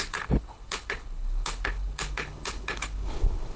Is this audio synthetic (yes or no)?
yes